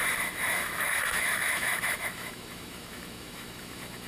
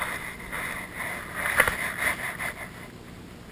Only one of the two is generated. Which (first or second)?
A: first